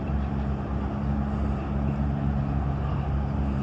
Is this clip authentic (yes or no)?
yes